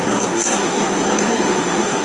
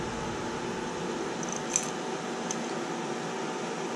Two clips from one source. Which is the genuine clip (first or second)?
second